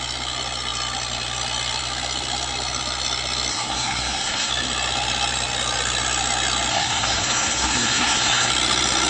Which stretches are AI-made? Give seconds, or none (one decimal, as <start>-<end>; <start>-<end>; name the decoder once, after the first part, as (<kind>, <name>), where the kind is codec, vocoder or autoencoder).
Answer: 3.5-4.5 (codec, SNAC); 6.7-8.5